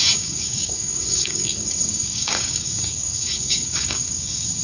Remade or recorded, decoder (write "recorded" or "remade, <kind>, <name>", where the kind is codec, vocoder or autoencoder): remade, codec, DAC